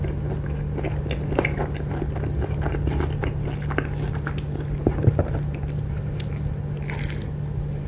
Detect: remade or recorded recorded